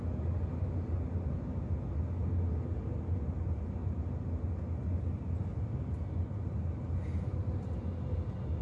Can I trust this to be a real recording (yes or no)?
yes